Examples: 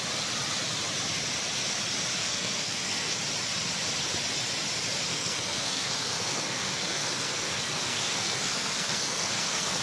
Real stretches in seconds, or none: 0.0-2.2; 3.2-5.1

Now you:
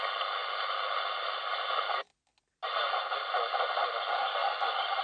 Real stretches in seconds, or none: 0.0-5.0

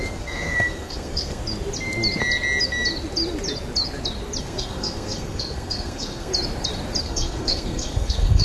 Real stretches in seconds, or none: 1.4-4.4; 6.3-7.0

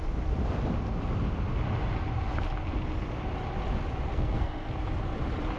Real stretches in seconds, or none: 0.0-4.1; 4.7-5.6

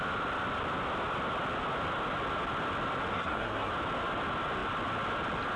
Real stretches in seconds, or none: 0.0-3.1; 3.7-5.6

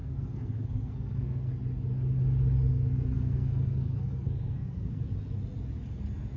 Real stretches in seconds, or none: 1.5-2.7; 5.0-6.4

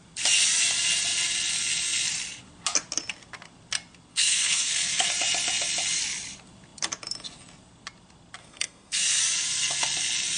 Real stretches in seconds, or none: 0.0-4.1; 5.1-8.4; 9.2-10.4